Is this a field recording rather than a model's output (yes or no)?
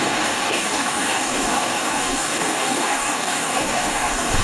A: no